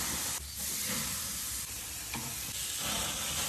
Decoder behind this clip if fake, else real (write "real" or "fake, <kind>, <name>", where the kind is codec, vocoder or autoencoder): real